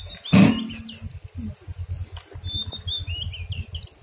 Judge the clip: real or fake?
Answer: real